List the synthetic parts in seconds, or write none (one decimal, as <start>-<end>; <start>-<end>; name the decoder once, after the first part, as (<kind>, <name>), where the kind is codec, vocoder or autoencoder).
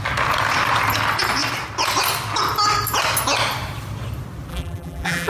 4.5-5.3 (vocoder, BigVGAN v2)